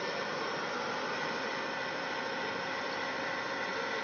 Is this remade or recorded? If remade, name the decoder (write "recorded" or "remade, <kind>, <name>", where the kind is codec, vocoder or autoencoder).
recorded